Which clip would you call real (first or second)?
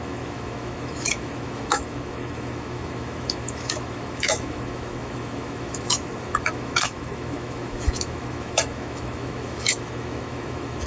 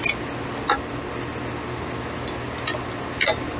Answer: second